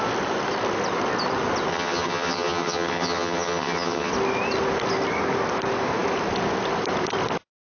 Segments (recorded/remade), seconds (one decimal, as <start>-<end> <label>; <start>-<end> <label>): 0.0-1.7 recorded; 1.7-4.1 remade; 4.1-7.7 recorded